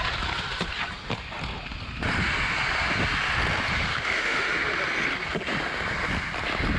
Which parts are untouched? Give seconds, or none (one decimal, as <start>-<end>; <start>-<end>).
0.0-3.9; 4.5-6.8